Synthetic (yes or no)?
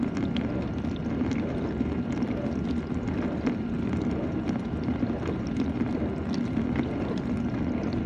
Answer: no